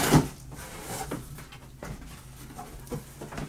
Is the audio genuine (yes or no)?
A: yes